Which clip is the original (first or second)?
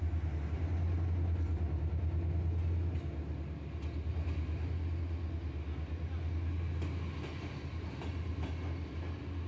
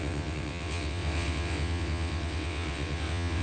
first